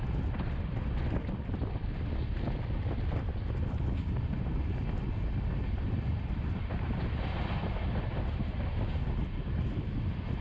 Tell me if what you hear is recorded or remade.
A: remade